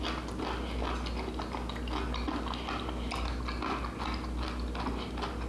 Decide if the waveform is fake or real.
real